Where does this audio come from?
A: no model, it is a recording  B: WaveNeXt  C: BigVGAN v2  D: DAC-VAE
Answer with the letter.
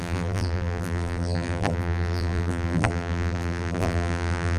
C